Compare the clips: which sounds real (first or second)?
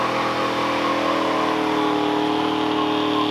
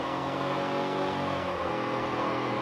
first